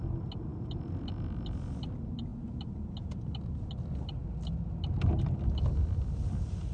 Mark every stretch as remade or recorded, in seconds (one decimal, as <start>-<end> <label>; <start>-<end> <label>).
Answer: 0.0-6.7 recorded